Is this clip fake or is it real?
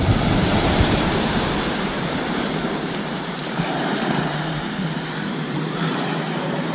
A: fake